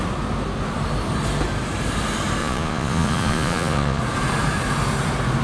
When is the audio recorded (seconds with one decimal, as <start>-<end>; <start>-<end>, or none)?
0.0-2.4; 4.0-5.4

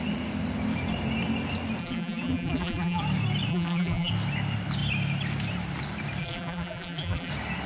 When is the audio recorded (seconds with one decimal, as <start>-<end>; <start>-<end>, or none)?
0.0-1.8; 3.0-3.5; 4.1-6.2; 7.3-7.7

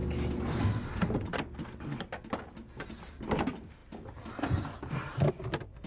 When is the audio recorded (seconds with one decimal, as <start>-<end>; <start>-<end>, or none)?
0.0-5.9

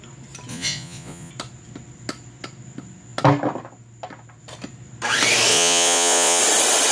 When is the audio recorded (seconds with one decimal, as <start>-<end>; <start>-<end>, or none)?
0.0-0.5; 1.3-5.5; 6.4-6.9

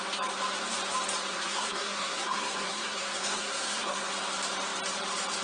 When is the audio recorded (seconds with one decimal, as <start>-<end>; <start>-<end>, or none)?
0.0-1.3; 4.1-5.4

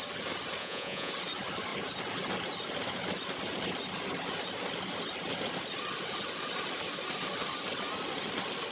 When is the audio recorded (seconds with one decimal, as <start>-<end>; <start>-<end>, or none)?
0.0-0.6; 1.1-8.7

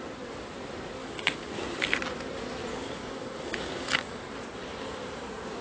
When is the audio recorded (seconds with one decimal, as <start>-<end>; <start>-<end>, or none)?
0.0-1.0; 1.5-2.7; 4.3-5.6

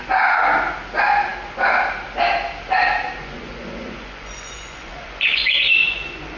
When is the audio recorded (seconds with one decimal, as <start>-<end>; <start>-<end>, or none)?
0.0-3.2